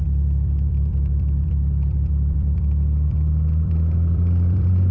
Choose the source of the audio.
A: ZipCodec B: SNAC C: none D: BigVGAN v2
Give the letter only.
D